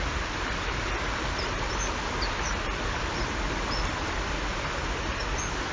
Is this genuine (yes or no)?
yes